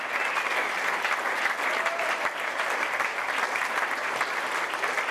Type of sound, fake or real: real